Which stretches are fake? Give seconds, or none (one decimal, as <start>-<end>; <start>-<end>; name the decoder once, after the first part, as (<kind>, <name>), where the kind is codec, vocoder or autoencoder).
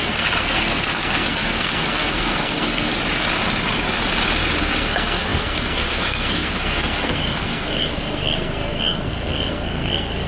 0.0-2.9 (codec, SNAC); 4.6-10.3